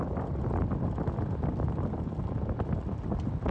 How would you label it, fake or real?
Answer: real